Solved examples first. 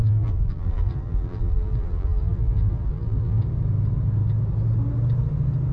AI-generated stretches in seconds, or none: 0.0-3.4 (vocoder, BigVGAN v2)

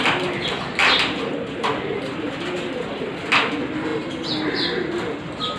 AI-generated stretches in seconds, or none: none

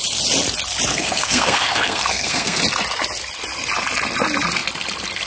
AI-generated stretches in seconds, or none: 0.9-2.6 (codec, SNAC)

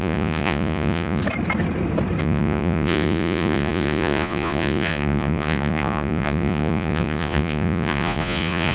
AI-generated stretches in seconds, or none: 0.0-1.2 (vocoder, Vocos); 2.2-8.7

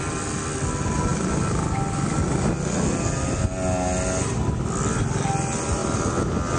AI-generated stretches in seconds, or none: none

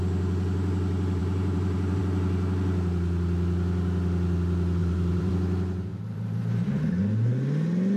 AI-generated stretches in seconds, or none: 1.2-2.0 (vocoder, BigVGAN v2); 4.8-5.3; 5.9-7.0

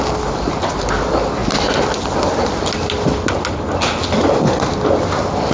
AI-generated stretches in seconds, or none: none

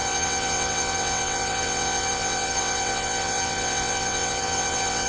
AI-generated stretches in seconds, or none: 0.0-5.1 (vocoder, WaveNeXt)